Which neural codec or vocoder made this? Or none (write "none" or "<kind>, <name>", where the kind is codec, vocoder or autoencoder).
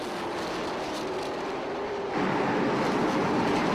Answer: none